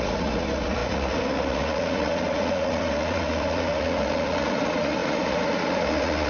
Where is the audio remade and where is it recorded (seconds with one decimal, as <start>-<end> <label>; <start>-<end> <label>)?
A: 0.0-6.3 remade